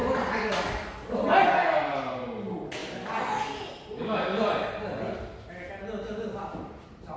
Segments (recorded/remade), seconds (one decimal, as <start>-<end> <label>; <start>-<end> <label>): 0.0-7.2 recorded